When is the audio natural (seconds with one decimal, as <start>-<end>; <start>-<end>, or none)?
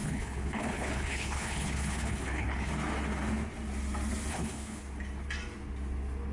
2.7-4.3; 4.8-6.3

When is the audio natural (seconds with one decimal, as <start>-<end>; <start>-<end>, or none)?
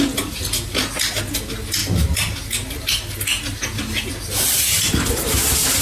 0.0-5.8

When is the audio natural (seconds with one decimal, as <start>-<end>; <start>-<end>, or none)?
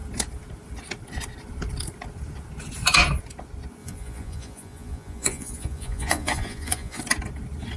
0.0-3.8; 7.0-7.8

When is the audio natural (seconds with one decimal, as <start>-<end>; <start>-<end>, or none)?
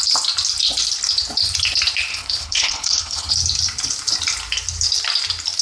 0.0-2.1; 3.3-5.6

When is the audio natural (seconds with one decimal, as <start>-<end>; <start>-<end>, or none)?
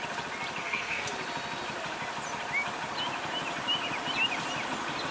0.0-0.6; 1.1-5.1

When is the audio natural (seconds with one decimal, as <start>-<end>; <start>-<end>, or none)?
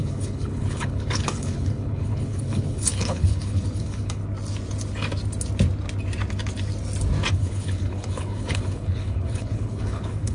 4.2-7.3